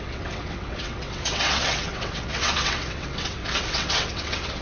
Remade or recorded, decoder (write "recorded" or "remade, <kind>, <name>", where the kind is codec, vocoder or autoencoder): remade, vocoder, WaveNeXt